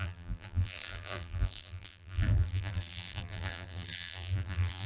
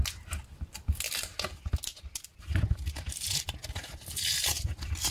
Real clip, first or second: second